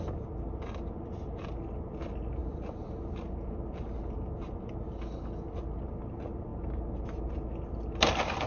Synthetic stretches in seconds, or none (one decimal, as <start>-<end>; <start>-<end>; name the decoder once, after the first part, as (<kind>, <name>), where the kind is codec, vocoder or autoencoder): none